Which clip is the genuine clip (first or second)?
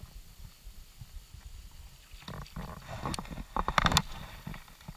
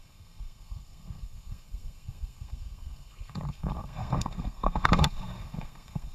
first